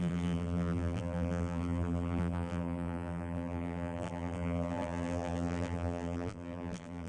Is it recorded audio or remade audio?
remade